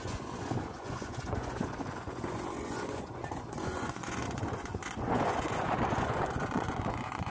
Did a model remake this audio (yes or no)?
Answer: yes